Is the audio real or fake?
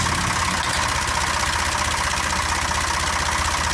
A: real